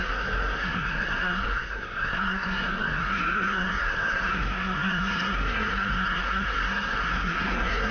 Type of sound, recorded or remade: remade